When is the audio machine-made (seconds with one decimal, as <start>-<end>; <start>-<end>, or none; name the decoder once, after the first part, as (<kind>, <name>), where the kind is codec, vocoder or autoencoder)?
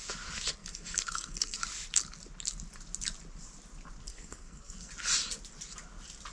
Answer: 0.6-1.6 (codec, SNAC); 4.1-4.9